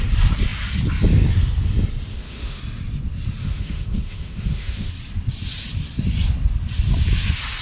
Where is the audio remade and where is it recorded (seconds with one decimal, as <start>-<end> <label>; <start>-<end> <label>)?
0.0-2.1 recorded; 2.1-2.6 remade; 2.6-3.4 recorded; 3.4-4.9 remade; 4.9-7.6 recorded